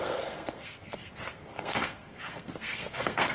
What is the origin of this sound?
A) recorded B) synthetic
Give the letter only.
B